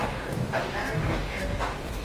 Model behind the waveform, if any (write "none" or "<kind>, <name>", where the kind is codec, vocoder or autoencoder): codec, DAC